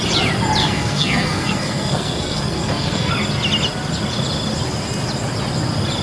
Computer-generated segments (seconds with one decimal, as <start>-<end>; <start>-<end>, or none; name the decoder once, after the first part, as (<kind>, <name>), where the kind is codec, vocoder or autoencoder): 0.6-3.1 (codec, SNAC)